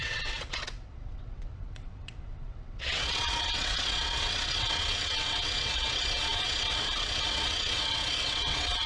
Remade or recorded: remade